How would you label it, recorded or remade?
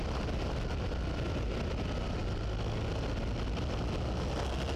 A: recorded